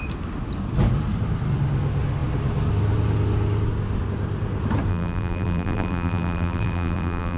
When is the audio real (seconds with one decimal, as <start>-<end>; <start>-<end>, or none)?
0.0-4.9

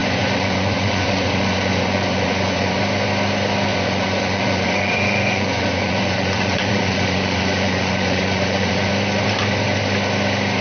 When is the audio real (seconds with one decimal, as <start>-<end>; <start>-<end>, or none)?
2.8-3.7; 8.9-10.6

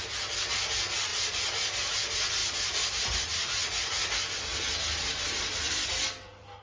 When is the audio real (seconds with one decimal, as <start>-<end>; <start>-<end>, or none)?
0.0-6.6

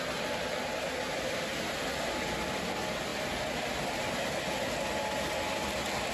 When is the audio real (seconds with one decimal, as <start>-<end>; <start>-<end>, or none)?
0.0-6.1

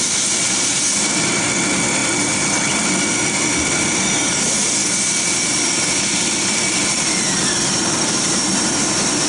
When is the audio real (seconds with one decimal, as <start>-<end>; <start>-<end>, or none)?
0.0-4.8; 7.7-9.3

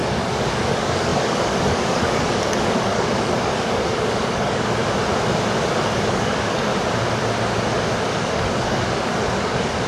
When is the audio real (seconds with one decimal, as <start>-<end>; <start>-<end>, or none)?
4.8-6.1; 6.7-8.0